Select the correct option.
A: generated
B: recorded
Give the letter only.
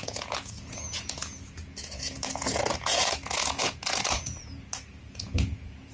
A